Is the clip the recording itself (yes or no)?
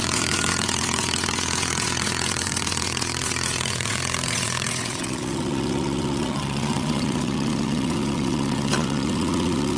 no